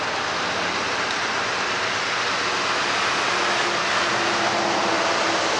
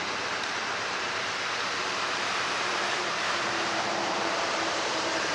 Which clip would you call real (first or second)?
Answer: first